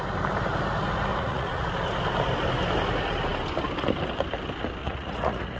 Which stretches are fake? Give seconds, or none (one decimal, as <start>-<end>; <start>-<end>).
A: 1.1-1.7; 4.8-5.6